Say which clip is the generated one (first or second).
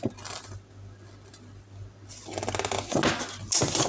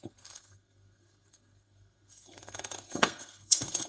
second